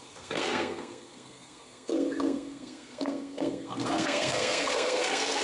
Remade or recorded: remade